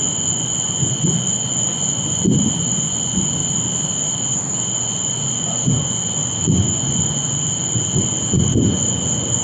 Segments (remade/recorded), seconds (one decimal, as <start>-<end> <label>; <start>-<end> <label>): 0.0-3.4 remade; 3.4-4.7 recorded; 4.7-9.4 remade